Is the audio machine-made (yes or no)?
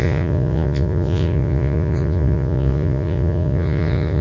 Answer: yes